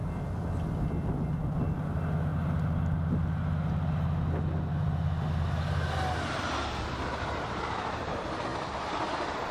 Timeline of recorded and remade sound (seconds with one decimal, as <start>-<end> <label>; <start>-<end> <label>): 0.0-9.5 recorded